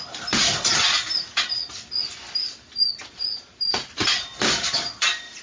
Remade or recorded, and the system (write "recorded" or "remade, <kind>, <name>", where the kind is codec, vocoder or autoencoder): recorded